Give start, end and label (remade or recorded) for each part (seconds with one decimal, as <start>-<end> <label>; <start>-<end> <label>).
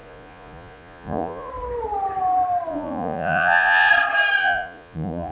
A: 0.0-1.5 remade; 1.5-2.7 recorded; 2.7-3.9 remade; 3.9-4.4 recorded; 4.4-5.3 remade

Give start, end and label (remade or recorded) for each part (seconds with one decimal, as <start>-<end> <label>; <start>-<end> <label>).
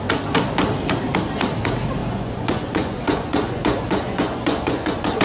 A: 0.0-2.0 recorded; 2.0-5.2 remade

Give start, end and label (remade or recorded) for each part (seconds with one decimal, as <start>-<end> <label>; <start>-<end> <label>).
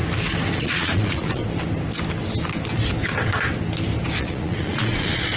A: 0.0-0.6 recorded; 0.6-1.4 remade; 1.4-4.2 recorded; 4.2-5.4 remade